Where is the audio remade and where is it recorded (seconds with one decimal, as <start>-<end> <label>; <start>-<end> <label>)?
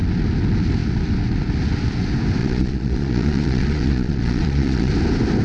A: 0.0-2.4 recorded; 2.4-4.9 remade; 4.9-5.4 recorded